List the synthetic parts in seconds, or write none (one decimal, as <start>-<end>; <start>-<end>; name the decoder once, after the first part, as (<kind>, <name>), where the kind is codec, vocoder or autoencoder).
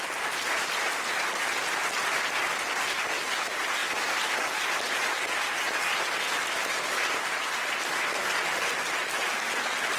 none